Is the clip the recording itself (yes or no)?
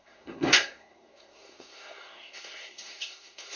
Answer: no